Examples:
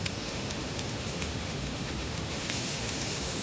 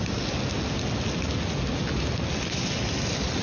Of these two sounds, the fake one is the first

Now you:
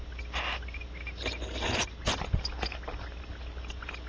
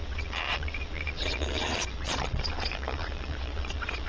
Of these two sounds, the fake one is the second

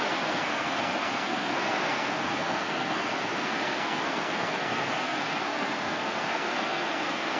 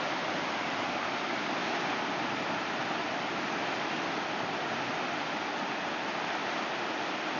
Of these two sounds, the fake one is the first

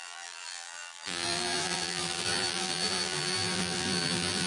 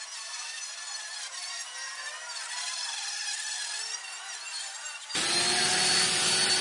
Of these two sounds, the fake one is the first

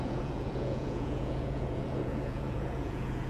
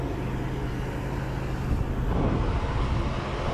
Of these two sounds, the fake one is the first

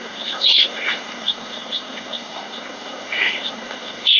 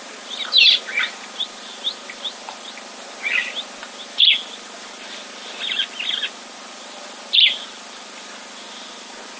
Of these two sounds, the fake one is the first